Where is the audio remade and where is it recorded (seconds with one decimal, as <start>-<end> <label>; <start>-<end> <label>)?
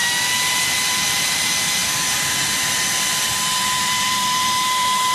0.0-0.5 recorded; 0.5-5.1 remade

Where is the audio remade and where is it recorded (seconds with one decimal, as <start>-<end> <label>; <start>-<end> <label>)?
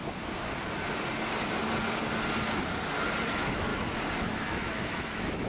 0.0-3.3 recorded; 3.3-3.7 remade; 3.7-4.2 recorded; 4.2-5.5 remade